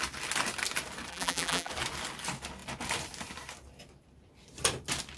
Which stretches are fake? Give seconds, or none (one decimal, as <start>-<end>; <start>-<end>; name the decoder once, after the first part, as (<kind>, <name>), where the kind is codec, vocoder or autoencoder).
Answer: 1.1-1.7 (vocoder, BigVGAN v2)